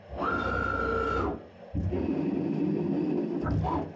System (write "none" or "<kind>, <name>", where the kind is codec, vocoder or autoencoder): none